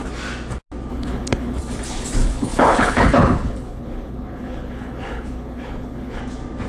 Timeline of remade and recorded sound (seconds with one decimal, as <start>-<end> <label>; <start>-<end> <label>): 0.0-0.9 recorded; 0.9-1.6 remade; 1.6-2.2 recorded; 2.2-6.2 remade; 6.2-6.7 recorded